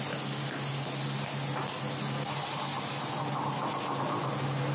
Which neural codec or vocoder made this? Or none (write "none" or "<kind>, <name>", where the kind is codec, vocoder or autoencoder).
none